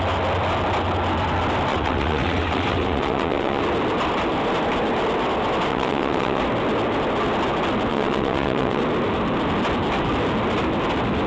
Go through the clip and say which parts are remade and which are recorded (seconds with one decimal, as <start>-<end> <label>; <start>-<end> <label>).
0.0-1.7 recorded; 1.7-3.6 remade; 3.6-5.7 recorded; 5.7-6.4 remade; 6.4-7.9 recorded; 7.9-8.8 remade; 8.8-11.3 recorded